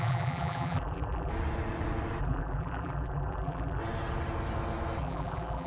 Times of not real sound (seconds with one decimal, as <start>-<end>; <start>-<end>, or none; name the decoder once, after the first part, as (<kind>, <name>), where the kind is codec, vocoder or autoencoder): 0.0-1.3 (vocoder, BigVGAN v2); 2.2-3.8; 5.0-5.7